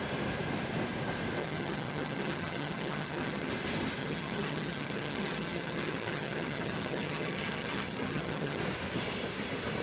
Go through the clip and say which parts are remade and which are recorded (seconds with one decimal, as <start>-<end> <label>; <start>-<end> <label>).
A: 0.0-1.4 recorded; 1.4-3.5 remade; 3.5-4.0 recorded; 4.0-8.6 remade; 8.6-9.8 recorded